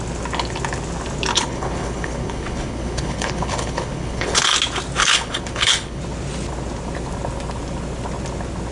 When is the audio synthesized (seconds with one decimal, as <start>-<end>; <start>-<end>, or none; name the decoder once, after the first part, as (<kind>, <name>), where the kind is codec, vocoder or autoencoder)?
1.3-4.5 (codec, HILCodec); 5.0-6.0